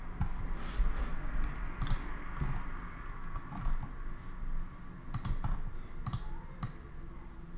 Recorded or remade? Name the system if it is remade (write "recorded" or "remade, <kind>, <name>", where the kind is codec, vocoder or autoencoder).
recorded